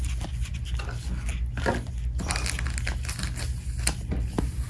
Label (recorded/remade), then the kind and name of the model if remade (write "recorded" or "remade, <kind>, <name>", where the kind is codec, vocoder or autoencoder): recorded